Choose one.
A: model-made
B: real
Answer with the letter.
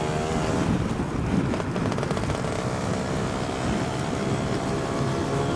B